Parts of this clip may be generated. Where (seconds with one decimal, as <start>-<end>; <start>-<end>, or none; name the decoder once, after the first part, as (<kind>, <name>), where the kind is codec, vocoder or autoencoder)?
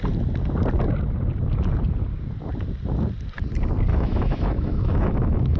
3.9-5.6 (autoencoder, DAC-VAE)